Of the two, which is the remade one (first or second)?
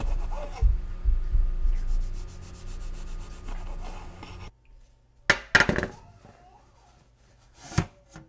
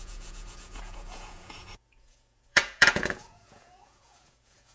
second